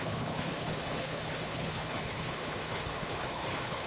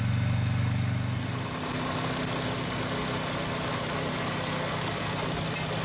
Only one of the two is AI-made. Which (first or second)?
first